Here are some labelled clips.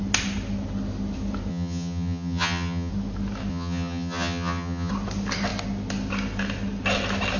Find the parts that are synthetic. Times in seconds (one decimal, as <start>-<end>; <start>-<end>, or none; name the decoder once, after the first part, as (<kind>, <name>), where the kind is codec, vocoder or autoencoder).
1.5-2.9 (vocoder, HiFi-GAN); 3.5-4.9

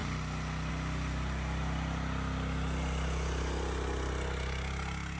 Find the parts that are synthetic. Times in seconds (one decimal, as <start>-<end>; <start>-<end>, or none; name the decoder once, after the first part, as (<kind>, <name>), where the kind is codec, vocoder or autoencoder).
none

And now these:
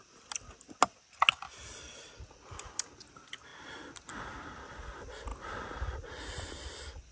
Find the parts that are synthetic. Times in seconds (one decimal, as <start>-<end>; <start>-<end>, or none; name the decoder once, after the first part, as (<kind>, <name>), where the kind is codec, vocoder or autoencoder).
none

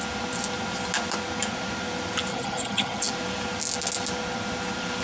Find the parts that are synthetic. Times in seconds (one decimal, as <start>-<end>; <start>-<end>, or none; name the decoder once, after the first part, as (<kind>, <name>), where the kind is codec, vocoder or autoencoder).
2.3-3.0 (vocoder, HiFi-GAN)